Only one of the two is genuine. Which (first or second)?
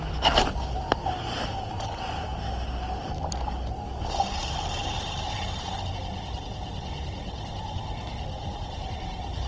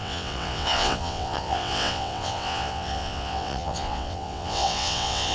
first